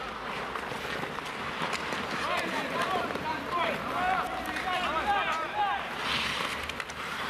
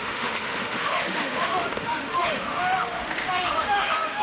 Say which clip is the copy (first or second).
second